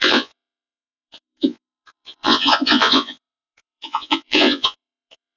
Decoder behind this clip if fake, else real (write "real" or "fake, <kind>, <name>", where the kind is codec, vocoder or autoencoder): fake, vocoder, Vocos